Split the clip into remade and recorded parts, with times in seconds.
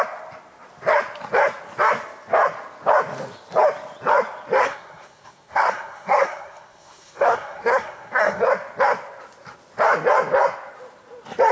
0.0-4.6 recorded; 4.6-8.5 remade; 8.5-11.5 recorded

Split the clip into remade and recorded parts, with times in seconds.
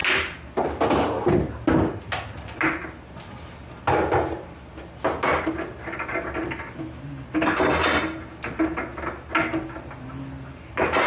0.0-11.1 recorded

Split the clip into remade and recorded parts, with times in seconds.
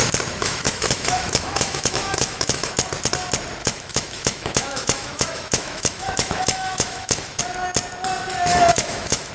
0.0-0.4 recorded; 0.4-2.7 remade; 2.7-3.6 recorded; 3.6-7.4 remade; 7.4-8.5 recorded; 8.5-9.3 remade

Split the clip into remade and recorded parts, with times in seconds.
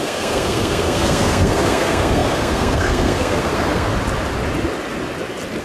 0.0-3.9 remade; 3.9-5.6 recorded